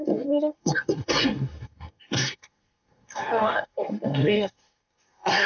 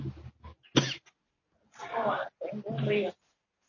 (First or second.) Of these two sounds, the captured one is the second